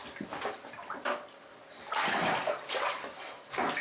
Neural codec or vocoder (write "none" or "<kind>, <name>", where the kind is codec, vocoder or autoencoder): none